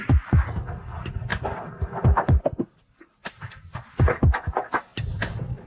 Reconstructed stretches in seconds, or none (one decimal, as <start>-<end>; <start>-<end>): none